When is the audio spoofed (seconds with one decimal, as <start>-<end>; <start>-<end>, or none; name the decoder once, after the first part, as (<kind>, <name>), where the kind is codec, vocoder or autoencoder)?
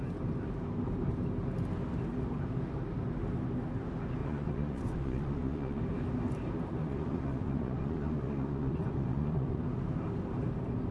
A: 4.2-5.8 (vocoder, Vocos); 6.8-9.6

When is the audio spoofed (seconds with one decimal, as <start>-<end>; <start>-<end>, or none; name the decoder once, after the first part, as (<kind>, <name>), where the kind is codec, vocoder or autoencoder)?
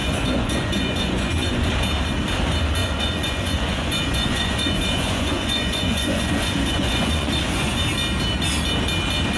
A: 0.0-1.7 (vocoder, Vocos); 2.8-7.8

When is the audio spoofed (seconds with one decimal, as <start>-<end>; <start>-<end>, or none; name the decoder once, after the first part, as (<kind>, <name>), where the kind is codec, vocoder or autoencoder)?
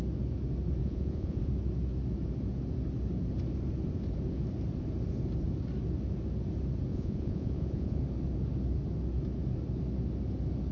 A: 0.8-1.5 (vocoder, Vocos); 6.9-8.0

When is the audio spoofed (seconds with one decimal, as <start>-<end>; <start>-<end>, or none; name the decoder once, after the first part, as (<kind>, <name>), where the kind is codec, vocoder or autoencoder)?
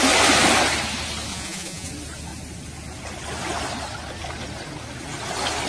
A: 1.3-1.9 (vocoder, Vocos)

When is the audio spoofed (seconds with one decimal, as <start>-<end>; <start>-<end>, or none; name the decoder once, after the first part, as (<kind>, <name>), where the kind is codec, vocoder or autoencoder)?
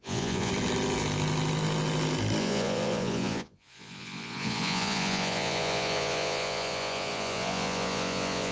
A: 0.0-0.5 (vocoder, Vocos); 2.4-8.5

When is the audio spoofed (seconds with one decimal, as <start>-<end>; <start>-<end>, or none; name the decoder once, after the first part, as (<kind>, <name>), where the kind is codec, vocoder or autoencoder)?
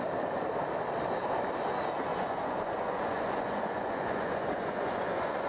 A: 2.1-5.5 (vocoder, Vocos)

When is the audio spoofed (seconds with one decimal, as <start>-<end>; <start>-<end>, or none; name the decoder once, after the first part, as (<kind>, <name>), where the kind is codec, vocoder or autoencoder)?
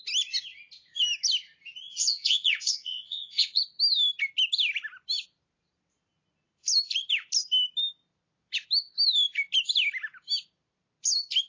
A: 2.0-3.6 (vocoder, Vocos)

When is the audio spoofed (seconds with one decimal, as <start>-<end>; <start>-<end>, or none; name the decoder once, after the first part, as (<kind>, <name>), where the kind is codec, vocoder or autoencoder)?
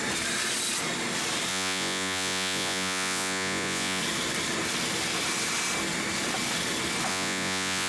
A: 1.5-4.0 (vocoder, Vocos); 7.1-7.9